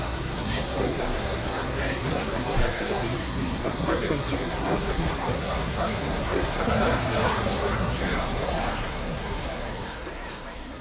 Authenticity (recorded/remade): remade